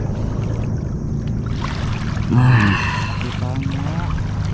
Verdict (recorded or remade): recorded